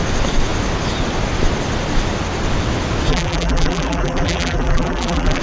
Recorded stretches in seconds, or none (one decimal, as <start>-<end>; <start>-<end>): 0.0-3.1